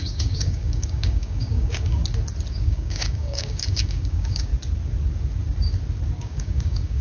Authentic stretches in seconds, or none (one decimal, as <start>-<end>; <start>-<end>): 2.0-2.5; 4.5-6.2